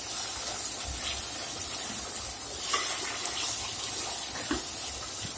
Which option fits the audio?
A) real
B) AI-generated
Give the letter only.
A